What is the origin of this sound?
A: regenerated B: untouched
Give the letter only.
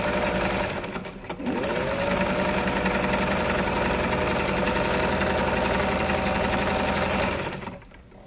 B